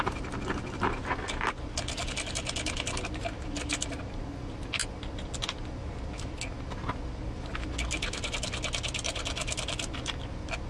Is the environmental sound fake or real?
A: real